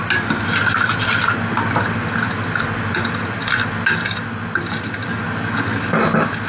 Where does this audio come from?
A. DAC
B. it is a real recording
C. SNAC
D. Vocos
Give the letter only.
B